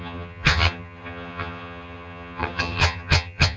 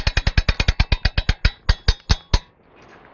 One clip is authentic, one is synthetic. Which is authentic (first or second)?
second